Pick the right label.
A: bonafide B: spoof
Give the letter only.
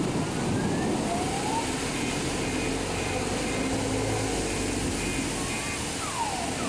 A